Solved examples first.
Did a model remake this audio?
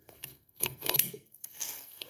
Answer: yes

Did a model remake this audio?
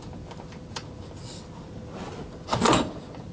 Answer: no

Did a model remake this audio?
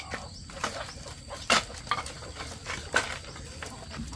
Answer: no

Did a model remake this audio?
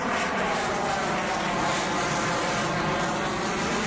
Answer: no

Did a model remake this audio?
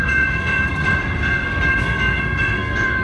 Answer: yes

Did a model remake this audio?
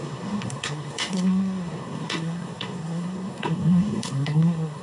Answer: yes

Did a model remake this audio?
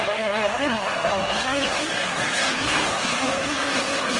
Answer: yes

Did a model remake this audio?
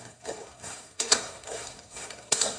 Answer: yes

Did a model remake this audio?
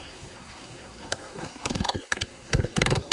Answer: yes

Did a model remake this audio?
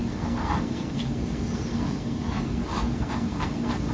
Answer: yes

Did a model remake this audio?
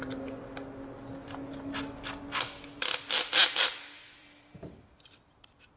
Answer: no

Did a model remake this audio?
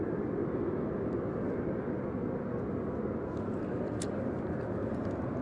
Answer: no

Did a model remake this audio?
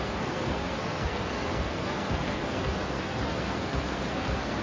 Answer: yes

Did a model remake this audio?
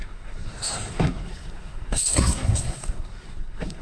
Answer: yes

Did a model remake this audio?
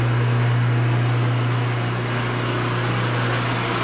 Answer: no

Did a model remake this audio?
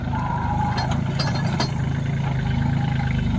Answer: no